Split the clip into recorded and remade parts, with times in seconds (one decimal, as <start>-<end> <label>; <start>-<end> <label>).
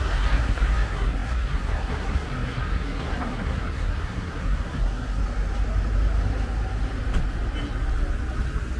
0.0-5.2 remade; 5.2-8.8 recorded